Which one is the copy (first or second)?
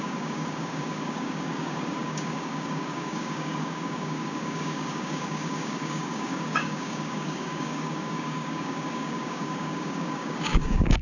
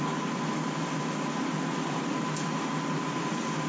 first